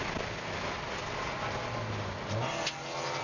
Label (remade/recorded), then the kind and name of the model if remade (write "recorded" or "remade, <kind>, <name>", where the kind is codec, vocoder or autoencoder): recorded